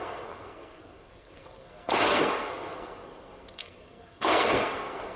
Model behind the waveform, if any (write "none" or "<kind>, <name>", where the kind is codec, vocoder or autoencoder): codec, SNAC